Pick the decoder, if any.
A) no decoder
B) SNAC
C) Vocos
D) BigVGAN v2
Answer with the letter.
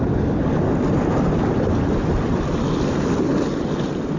A